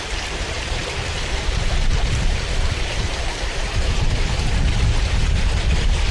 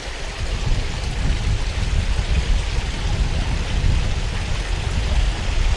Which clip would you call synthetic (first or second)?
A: first